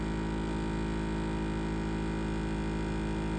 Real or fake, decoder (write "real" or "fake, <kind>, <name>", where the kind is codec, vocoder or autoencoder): real